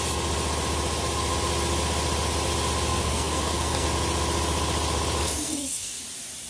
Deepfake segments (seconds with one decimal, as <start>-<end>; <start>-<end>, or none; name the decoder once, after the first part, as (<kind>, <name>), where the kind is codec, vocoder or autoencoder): 2.9-3.9 (codec, SNAC); 5.2-6.0